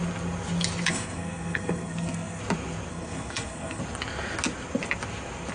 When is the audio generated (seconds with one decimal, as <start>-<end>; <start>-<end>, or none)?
0.9-2.4; 2.9-3.8